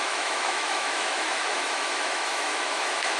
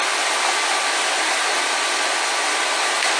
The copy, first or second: first